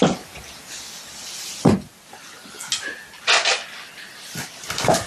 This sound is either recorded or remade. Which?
recorded